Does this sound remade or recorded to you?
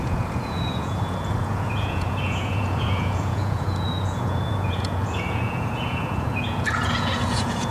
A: remade